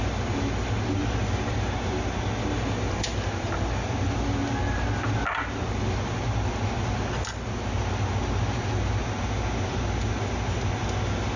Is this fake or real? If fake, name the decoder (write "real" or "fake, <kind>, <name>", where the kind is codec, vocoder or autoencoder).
real